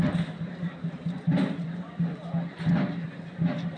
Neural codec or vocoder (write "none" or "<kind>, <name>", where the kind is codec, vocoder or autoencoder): none